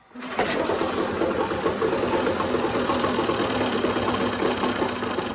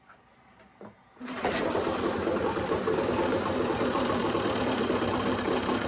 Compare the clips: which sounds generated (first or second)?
second